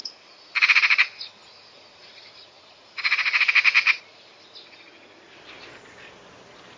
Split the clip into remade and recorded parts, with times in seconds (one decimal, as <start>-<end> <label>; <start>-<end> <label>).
0.0-0.5 remade; 0.5-1.4 recorded; 1.4-3.4 remade; 3.4-6.8 recorded